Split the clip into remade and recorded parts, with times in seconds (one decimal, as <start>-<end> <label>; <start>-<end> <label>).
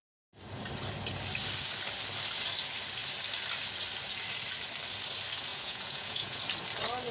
0.0-5.5 recorded; 5.5-6.4 remade; 6.4-7.1 recorded